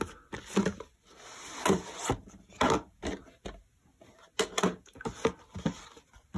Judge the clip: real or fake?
real